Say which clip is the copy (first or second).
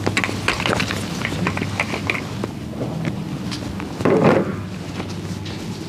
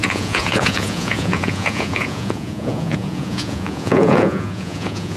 second